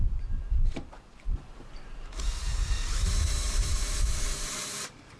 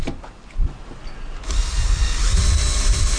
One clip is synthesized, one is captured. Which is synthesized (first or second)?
first